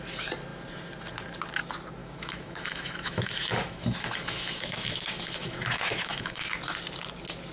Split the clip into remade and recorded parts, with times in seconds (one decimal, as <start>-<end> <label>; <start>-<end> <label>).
0.0-2.0 recorded; 2.0-6.5 remade; 6.5-7.5 recorded